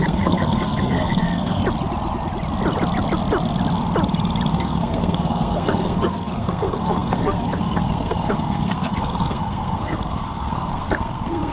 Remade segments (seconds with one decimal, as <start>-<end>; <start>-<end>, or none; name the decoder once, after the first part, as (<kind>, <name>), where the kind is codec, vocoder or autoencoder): 0.0-1.6 (codec, SNAC); 4.5-11.5

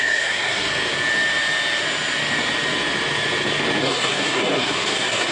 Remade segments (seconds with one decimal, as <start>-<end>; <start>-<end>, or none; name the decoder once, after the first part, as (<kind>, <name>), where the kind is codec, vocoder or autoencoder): 0.0-0.7 (codec, SNAC); 3.8-5.3

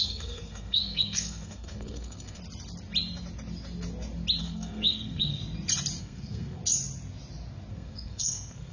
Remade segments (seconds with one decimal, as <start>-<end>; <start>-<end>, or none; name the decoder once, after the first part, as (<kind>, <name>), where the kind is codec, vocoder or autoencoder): 0.0-2.4 (codec, SNAC); 4.4-5.4; 6.0-6.6; 7.7-8.7

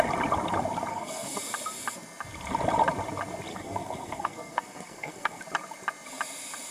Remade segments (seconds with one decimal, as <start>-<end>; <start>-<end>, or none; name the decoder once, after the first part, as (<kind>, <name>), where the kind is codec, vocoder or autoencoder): 0.9-1.4 (codec, SNAC); 3.5-5.4

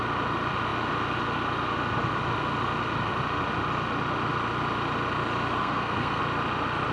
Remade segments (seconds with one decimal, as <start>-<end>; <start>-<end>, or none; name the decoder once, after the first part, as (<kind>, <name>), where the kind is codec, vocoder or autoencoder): 5.6-6.2 (codec, SNAC)